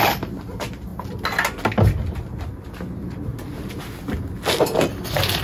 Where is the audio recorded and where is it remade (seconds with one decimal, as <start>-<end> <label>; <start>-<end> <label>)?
0.0-5.4 recorded